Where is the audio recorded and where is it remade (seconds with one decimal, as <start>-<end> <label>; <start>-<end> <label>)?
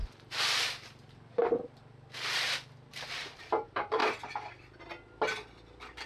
0.0-1.4 remade; 1.4-2.9 recorded; 2.9-4.0 remade; 4.0-6.1 recorded